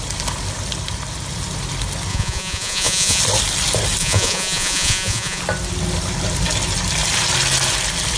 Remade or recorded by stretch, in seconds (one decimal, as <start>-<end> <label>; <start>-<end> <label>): 0.0-2.1 recorded; 2.1-3.2 remade; 3.2-4.0 recorded; 4.0-5.4 remade; 5.4-8.2 recorded